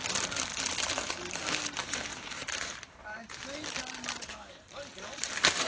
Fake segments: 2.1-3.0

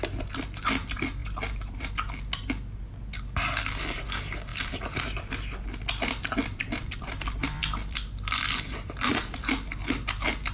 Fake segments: 1.2-1.9; 4.5-5.8; 6.4-9.4

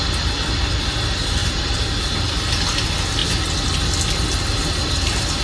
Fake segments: 1.4-2.1; 4.5-5.4

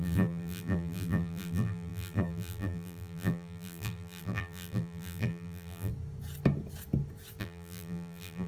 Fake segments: 0.0-5.9; 7.4-8.5